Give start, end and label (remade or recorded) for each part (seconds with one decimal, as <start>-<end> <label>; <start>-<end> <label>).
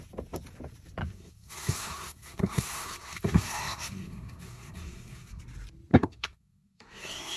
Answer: 0.0-1.0 recorded; 1.0-5.4 remade; 5.4-5.9 recorded; 5.9-7.4 remade